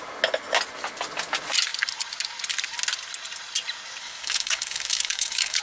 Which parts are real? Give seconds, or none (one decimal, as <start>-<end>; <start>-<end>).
0.0-4.0